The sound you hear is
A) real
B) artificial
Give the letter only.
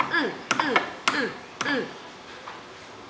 A